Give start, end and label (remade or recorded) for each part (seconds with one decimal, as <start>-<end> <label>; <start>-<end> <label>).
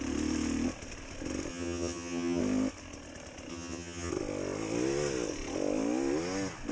0.0-1.5 recorded; 1.5-2.4 remade; 2.4-3.5 recorded; 3.5-4.1 remade; 4.1-6.7 recorded